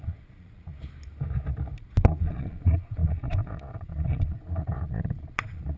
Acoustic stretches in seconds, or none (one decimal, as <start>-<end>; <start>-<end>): 0.7-1.8

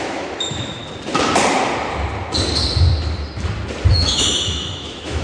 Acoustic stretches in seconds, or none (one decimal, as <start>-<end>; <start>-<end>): 0.8-3.9

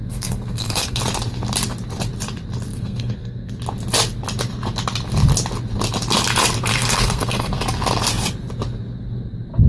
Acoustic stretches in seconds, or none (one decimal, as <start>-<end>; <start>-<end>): 1.0-2.7; 3.5-6.7; 7.6-9.7

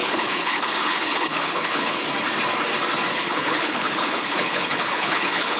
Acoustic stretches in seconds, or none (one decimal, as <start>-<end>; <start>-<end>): 2.0-3.1

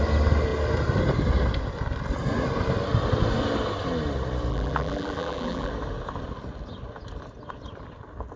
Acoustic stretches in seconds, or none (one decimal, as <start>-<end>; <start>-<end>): 0.0-4.5; 5.7-8.4

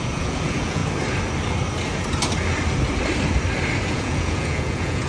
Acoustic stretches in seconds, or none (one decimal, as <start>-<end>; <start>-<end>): 0.8-3.9

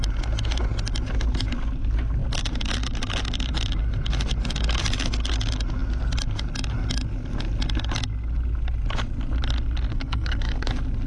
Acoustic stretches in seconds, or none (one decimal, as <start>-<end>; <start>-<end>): 0.0-9.9; 10.7-11.1

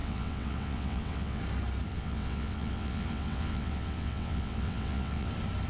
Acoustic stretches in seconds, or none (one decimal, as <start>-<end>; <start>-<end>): 1.4-1.9; 5.3-5.7